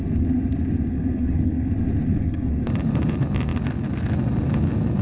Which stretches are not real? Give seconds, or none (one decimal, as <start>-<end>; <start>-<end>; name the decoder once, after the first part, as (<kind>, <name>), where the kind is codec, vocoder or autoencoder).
0.9-1.7 (codec, SNAC); 2.1-2.6